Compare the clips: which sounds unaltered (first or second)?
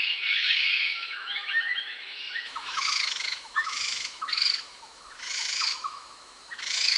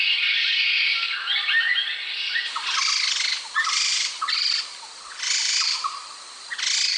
second